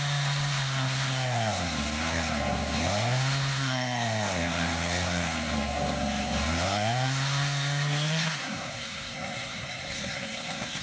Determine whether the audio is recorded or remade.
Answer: remade